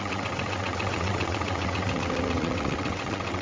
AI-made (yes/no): yes